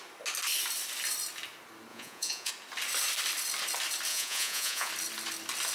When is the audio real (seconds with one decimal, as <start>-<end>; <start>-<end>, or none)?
0.0-1.9; 2.5-4.1; 4.9-5.7